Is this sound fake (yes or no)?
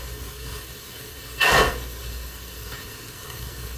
yes